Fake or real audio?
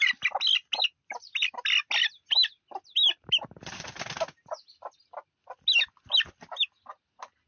real